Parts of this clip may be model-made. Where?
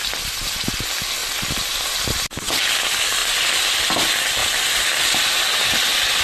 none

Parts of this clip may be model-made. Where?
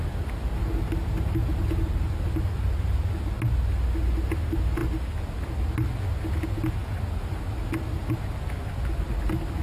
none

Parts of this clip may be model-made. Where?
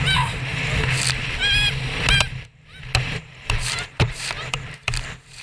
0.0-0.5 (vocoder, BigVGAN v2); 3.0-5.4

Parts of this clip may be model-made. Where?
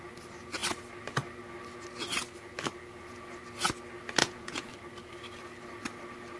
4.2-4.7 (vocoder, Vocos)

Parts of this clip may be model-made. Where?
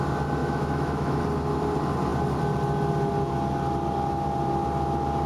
0.4-1.2 (autoencoder, DAC-VAE)